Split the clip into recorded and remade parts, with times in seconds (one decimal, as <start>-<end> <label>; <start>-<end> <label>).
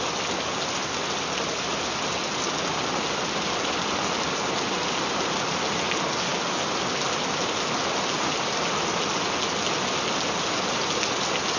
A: 0.0-11.6 recorded